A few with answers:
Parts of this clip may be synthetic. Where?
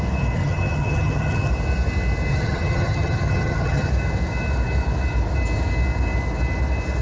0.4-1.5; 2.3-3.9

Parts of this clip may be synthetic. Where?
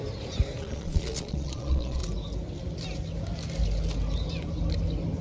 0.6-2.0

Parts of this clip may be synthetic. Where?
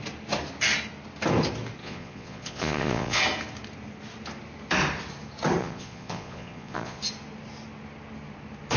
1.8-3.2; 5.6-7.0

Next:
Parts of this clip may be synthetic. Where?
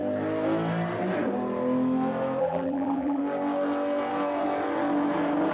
2.4-3.2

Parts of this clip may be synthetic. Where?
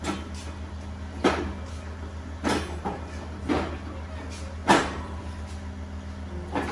4.6-5.5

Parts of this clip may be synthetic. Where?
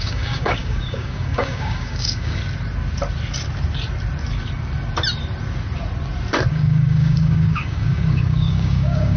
0.0-2.4; 6.5-9.2